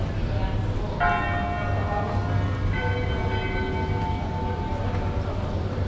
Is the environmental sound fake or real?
real